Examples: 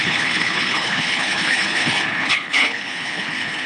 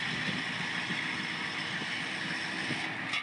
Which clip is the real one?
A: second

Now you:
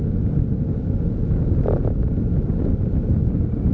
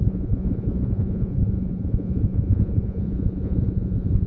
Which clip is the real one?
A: first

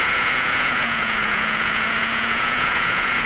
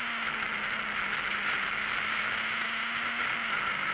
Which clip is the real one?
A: second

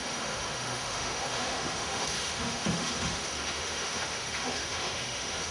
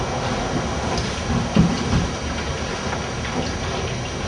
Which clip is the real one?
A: second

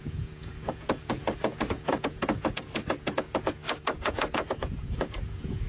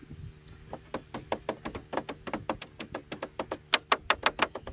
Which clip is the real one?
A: second